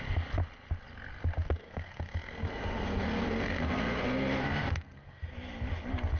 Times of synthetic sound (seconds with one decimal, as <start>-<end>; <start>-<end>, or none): 1.6-5.3